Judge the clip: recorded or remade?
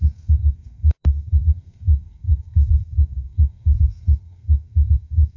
remade